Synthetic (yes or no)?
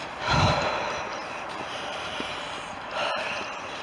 yes